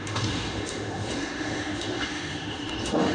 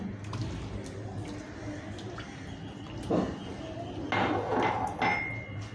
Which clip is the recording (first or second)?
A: second